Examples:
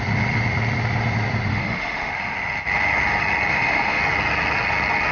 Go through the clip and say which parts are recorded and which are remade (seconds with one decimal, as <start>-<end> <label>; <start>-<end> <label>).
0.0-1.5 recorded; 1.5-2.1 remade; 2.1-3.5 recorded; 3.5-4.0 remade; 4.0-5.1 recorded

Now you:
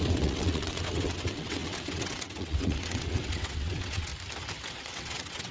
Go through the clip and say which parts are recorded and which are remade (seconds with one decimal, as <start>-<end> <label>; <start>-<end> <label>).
0.0-4.1 remade; 4.1-4.7 recorded; 4.7-5.5 remade

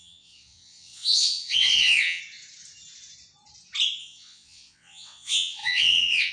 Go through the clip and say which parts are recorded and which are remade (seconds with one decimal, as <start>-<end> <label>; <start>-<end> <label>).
0.0-2.2 remade; 2.2-4.0 recorded; 4.0-6.3 remade

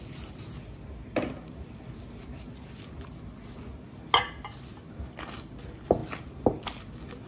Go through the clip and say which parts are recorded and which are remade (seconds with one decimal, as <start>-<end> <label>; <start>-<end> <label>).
0.0-7.3 recorded

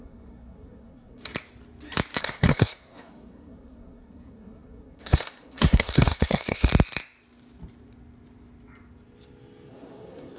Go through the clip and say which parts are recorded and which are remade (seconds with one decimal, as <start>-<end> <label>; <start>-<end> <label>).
0.0-1.2 remade; 1.2-2.2 recorded; 2.2-6.7 remade; 6.7-9.7 recorded; 9.7-10.4 remade

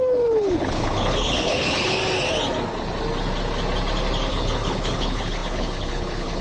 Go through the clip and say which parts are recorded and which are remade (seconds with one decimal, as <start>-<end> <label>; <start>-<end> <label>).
0.0-2.0 remade; 2.0-4.3 recorded; 4.3-6.4 remade